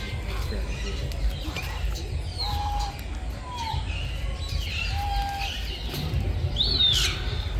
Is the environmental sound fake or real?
real